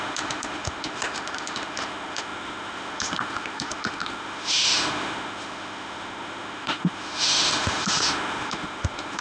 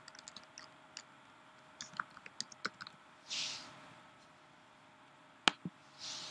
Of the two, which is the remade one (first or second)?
first